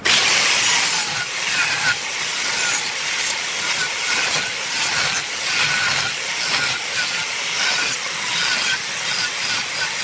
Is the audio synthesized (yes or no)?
no